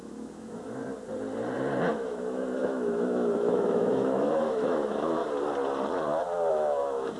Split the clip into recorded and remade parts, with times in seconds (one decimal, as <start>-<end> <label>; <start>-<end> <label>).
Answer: 0.0-0.8 remade; 0.8-1.9 recorded; 1.9-5.2 remade; 5.2-6.5 recorded; 6.5-7.2 remade